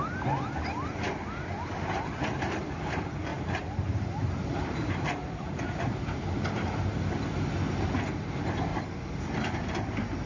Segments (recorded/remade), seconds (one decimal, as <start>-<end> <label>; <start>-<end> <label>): 0.0-3.3 recorded; 3.3-7.2 remade; 7.2-8.7 recorded; 8.7-9.9 remade; 9.9-10.3 recorded